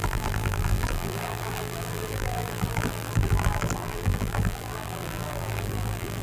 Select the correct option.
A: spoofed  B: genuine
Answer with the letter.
A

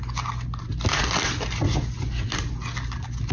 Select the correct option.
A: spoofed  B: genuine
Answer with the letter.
B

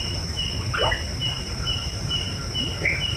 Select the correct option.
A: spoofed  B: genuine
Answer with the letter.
A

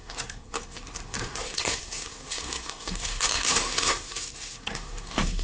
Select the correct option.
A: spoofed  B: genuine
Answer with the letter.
A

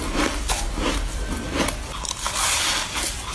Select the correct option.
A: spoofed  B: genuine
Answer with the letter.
B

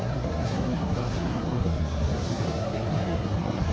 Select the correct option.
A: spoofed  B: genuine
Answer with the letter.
A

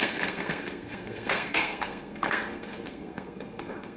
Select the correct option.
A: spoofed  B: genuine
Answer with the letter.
A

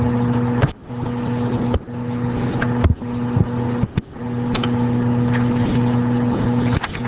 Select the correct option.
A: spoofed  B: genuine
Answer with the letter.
B